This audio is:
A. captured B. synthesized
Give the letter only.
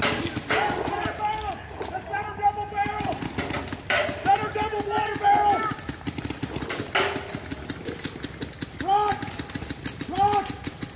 A